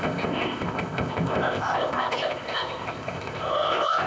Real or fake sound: fake